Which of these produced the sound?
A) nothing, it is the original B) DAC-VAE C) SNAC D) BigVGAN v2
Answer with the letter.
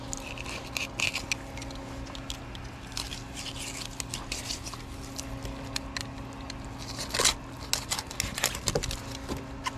A